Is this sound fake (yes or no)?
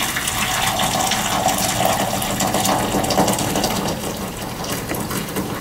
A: no